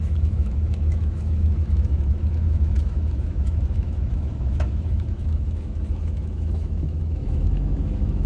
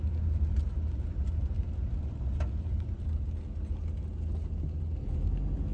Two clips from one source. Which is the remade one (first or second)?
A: first